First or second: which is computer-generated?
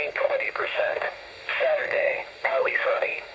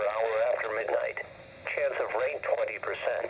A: first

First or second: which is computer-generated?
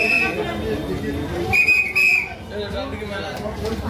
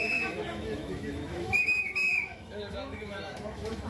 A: second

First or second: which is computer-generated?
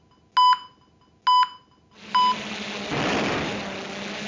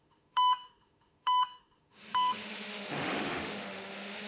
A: second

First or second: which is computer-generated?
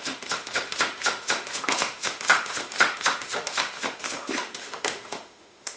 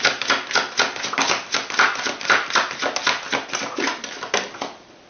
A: first